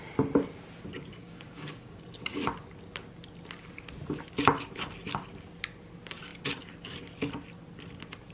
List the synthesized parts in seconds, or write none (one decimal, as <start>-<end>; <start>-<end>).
1.2-2.0